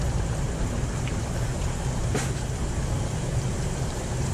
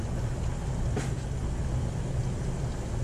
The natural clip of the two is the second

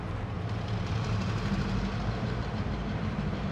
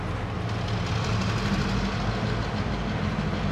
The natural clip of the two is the second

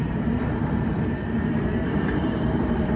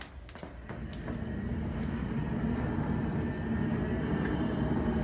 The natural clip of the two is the second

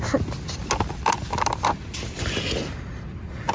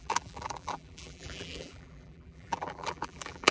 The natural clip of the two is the first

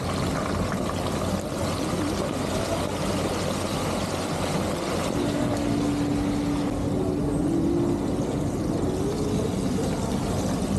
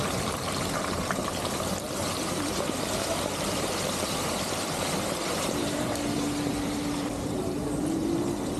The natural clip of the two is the first